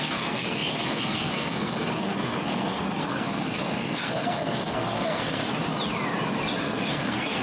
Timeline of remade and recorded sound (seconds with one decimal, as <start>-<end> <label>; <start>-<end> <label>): 0.0-5.4 remade; 5.4-6.6 recorded; 6.6-7.4 remade